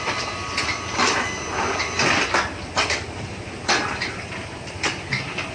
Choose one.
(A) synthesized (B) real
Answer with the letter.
B